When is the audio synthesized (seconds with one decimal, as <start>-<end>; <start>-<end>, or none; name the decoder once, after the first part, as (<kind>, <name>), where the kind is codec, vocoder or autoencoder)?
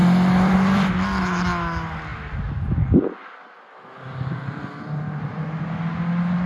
0.0-0.9 (vocoder, BigVGAN v2)